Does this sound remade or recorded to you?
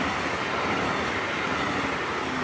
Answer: recorded